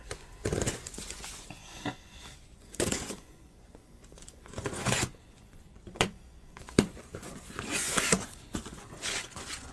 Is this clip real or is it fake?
fake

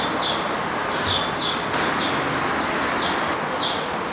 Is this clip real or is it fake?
real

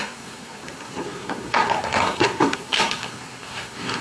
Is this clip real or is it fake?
fake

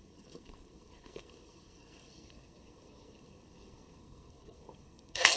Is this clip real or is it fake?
fake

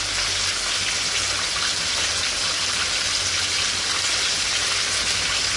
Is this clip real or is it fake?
real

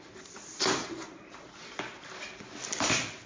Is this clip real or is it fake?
real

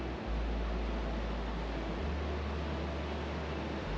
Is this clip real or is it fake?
real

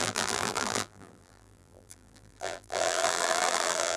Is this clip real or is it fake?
fake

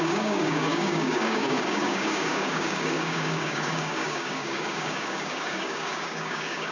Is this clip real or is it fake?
fake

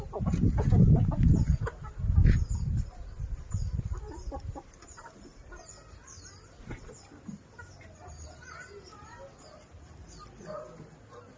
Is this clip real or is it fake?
real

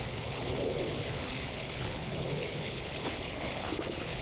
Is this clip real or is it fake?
fake